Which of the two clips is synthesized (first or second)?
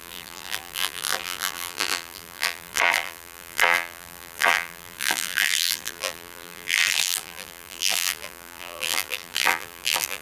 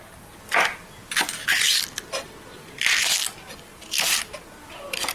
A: first